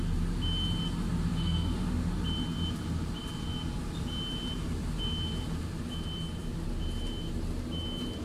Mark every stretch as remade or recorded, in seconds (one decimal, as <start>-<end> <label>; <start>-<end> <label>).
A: 0.0-1.3 recorded; 1.3-2.1 remade; 2.1-8.2 recorded